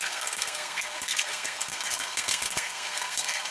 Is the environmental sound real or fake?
fake